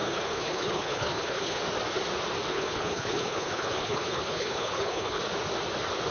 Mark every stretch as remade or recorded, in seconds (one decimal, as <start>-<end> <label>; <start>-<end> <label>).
0.0-1.6 remade; 1.6-2.5 recorded; 2.5-5.2 remade; 5.2-6.1 recorded